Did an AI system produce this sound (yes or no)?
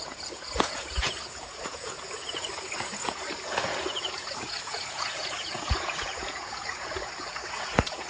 yes